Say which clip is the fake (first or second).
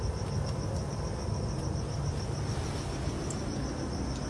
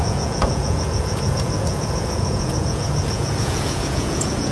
second